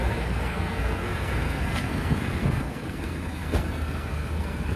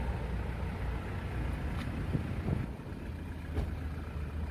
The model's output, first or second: first